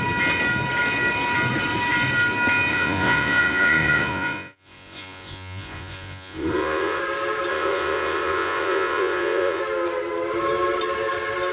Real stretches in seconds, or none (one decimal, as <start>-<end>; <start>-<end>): 0.0-2.7; 7.0-7.5; 9.6-11.5